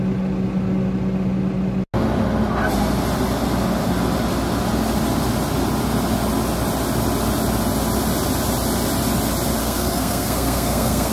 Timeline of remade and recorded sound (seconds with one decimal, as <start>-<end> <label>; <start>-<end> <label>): 0.0-9.6 recorded; 9.6-11.1 remade